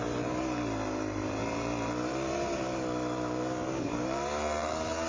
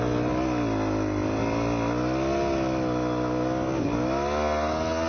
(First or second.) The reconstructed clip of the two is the first